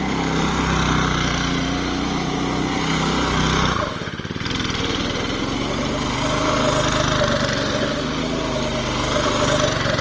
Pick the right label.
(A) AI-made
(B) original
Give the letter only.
B